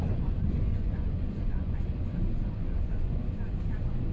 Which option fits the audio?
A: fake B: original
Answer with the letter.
A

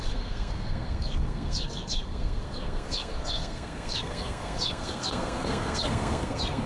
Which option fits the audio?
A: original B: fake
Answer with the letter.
B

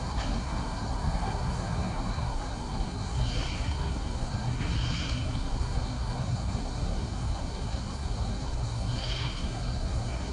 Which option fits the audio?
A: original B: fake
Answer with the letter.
B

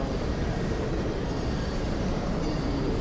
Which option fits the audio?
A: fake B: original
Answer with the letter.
B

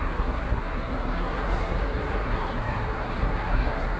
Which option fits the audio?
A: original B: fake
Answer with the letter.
B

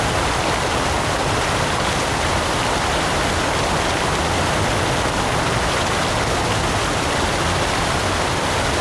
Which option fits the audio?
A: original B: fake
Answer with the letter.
A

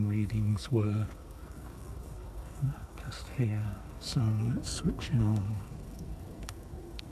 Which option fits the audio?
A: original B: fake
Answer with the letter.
B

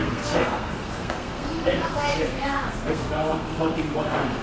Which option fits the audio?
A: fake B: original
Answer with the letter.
A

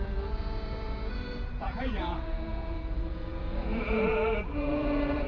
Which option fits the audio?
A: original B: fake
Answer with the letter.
B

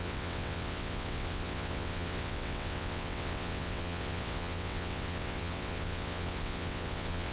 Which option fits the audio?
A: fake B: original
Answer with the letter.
A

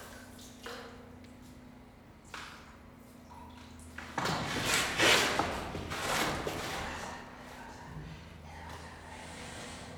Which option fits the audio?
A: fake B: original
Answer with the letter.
B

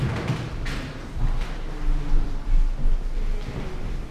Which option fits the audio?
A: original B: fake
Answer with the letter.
A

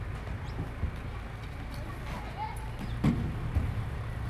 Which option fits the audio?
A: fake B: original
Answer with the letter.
B